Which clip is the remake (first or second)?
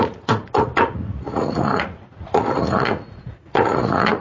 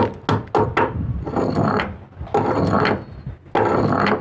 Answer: first